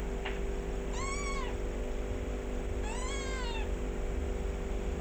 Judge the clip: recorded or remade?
recorded